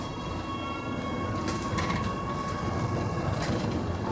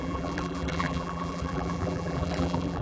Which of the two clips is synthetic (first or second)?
second